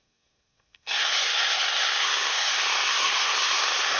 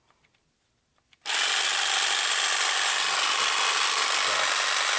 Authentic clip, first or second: second